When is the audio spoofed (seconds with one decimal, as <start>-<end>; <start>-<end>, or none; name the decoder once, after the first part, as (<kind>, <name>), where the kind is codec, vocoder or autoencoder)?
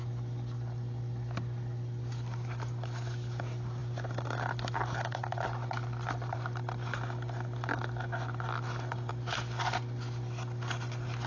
none